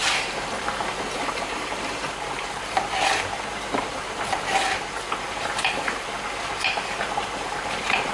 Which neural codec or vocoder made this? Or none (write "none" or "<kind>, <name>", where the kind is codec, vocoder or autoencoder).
vocoder, BigVGAN v2